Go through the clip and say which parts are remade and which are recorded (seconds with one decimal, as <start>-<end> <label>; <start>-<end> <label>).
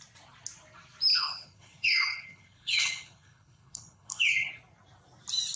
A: 0.0-1.1 recorded; 1.1-4.5 remade; 4.5-5.6 recorded